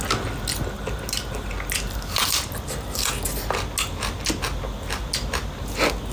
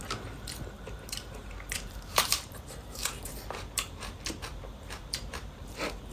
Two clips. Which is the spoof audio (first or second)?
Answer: second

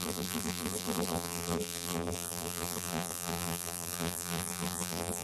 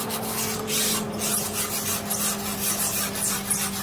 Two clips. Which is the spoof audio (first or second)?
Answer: first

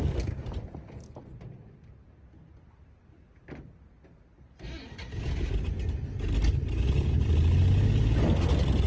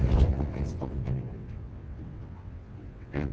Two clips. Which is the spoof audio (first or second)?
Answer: second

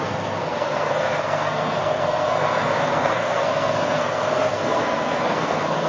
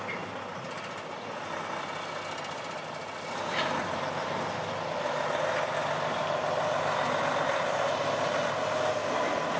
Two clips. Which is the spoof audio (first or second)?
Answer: first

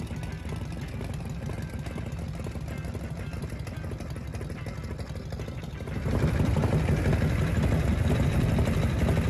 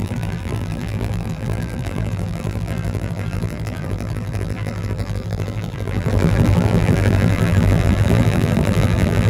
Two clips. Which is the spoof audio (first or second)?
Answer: second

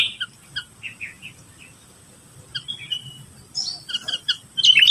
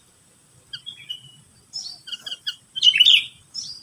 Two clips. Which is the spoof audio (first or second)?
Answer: second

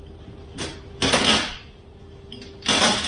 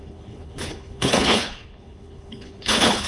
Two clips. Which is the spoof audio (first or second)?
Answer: second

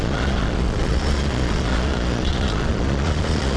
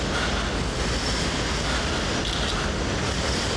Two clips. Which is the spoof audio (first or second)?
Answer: first